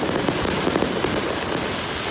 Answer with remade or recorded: recorded